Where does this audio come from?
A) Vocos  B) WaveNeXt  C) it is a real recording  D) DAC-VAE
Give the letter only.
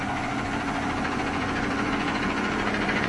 A